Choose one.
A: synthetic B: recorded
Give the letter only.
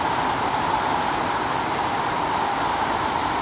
B